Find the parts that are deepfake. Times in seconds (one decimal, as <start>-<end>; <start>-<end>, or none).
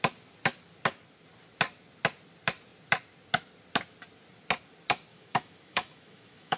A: 5.1-6.6